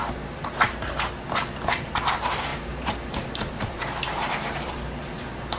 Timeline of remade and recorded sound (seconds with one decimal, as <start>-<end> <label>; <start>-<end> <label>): 0.0-0.9 remade; 0.9-2.5 recorded; 2.5-5.6 remade